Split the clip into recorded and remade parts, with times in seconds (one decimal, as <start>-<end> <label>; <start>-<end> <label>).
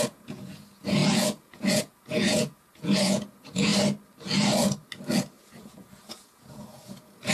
0.0-3.7 remade; 3.7-5.4 recorded; 5.4-7.3 remade